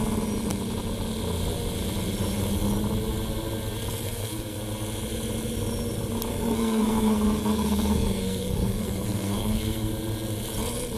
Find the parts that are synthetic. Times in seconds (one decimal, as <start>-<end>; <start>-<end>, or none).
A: 4.0-4.6; 6.3-9.9